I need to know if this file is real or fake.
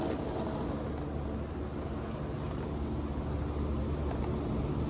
real